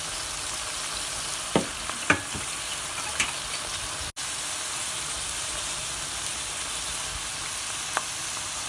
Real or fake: real